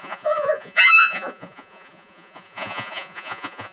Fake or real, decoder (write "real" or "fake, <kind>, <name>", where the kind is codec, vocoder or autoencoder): fake, vocoder, Vocos